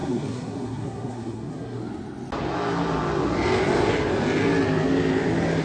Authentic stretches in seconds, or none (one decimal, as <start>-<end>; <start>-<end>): 1.8-5.6